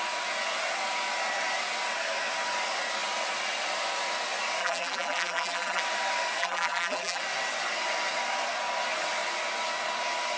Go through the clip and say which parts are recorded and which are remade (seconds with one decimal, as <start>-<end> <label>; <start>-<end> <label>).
0.0-4.6 recorded; 4.6-5.8 remade; 5.8-6.4 recorded; 6.4-7.2 remade; 7.2-10.4 recorded